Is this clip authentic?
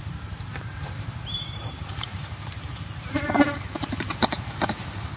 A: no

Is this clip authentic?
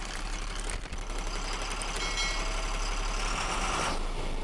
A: yes